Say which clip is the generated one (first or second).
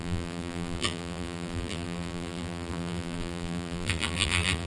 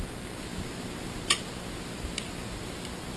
first